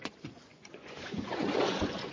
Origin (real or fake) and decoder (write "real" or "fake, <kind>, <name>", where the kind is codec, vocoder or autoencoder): fake, vocoder, Vocos